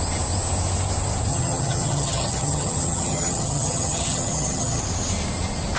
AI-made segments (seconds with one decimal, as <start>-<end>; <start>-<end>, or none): 1.3-4.8

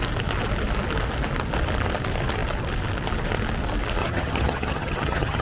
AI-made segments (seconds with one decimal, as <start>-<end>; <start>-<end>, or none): 4.0-5.4

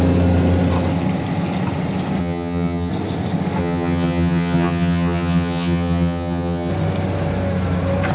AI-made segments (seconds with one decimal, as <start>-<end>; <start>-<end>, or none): 2.2-2.9; 3.6-6.7

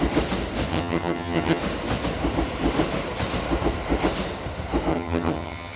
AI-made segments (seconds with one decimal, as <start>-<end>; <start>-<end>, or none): 0.7-1.6; 4.9-5.8

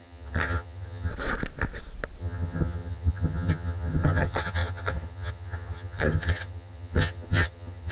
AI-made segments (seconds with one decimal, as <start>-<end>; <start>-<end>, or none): 0.0-1.1; 2.2-7.9

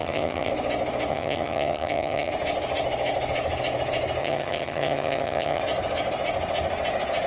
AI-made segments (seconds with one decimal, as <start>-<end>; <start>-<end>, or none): 0.0-0.5; 1.1-2.3; 4.2-5.6

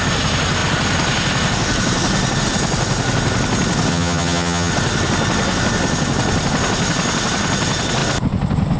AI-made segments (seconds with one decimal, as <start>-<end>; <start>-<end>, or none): 3.9-4.7

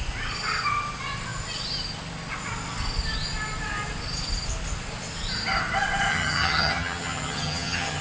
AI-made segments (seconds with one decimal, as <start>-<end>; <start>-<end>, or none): 6.1-8.0